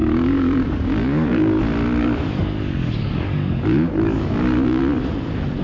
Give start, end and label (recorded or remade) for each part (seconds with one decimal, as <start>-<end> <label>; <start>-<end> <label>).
0.0-1.6 remade; 1.6-2.0 recorded; 2.0-4.8 remade; 4.8-5.6 recorded